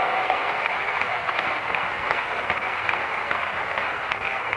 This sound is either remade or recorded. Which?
remade